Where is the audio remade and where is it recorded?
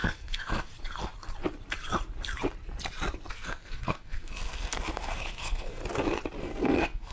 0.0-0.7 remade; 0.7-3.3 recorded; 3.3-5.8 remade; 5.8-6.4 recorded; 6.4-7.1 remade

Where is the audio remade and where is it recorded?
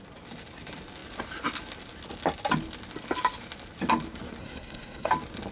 0.0-4.4 recorded; 4.4-5.1 remade; 5.1-5.5 recorded